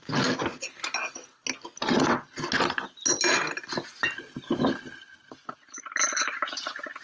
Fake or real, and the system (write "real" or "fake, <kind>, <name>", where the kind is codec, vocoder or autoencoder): real